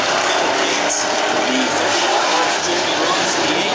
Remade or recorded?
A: recorded